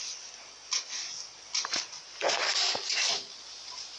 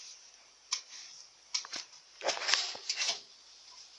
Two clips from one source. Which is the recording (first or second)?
first